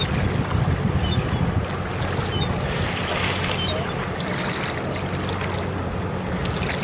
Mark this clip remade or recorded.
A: recorded